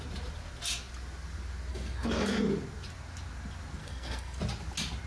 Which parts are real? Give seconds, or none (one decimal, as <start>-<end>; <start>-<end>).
0.0-1.7; 2.4-3.8; 4.4-5.1